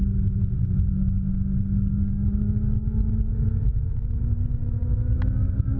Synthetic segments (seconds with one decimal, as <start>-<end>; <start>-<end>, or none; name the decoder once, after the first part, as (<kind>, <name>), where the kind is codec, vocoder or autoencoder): none